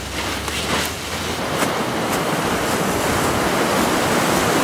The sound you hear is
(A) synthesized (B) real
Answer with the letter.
B